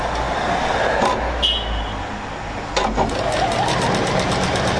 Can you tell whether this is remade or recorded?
recorded